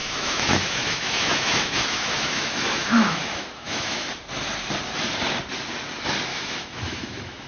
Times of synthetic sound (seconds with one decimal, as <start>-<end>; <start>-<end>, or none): 0.0-4.1; 6.3-7.5

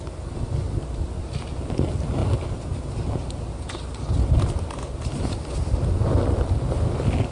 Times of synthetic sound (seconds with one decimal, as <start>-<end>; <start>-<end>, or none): none

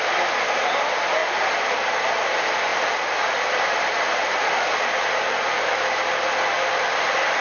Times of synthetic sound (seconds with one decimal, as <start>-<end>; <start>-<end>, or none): none

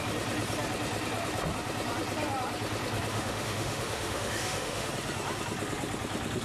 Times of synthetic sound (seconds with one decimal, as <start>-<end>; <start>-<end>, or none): 3.1-4.9

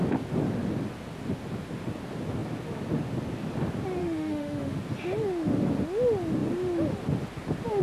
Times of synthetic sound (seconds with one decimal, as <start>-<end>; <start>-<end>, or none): 4.0-4.8

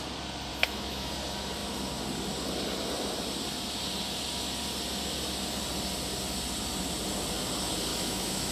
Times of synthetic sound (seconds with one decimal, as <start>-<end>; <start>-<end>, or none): 0.5-1.1; 7.9-8.5

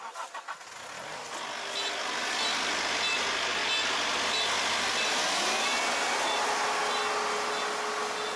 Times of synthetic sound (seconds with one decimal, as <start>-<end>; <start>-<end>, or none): none

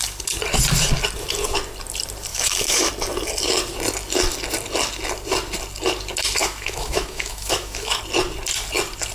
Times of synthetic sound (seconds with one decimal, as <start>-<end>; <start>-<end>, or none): 2.3-2.9; 6.4-8.0